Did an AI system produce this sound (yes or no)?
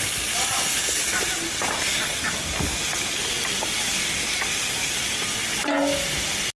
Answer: no